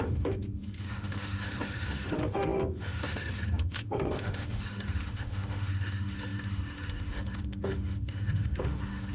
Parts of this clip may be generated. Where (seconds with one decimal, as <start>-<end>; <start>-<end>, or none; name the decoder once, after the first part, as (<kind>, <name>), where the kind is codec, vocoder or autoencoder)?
0.0-9.1 (autoencoder, DAC-VAE)